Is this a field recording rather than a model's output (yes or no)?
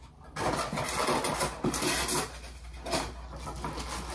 yes